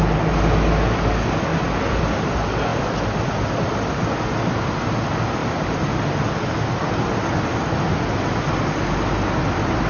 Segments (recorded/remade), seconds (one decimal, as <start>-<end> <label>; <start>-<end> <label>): 0.0-1.5 recorded; 1.5-2.3 remade; 2.3-9.9 recorded